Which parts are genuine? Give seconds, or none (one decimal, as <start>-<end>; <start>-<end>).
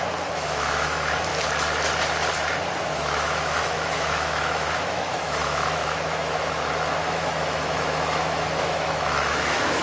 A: 1.3-2.9